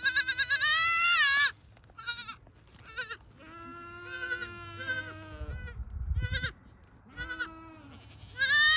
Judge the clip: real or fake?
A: real